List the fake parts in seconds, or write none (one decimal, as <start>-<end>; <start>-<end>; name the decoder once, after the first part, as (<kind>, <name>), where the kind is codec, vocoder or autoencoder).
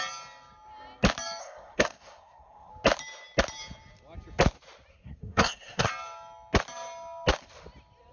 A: 1.4-2.7 (codec, SNAC); 4.9-5.9